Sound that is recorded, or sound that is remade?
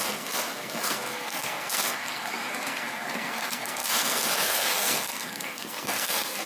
remade